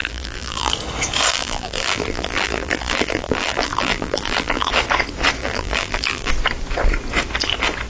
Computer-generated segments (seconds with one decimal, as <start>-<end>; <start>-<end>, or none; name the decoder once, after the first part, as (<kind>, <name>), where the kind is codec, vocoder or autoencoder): 0.0-0.7 (vocoder, BigVGAN v2); 1.3-4.7; 5.4-6.3